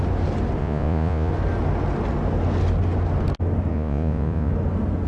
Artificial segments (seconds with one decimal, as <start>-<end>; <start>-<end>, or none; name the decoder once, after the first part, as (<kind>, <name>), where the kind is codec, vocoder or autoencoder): 0.6-1.3 (vocoder, Vocos); 3.7-4.5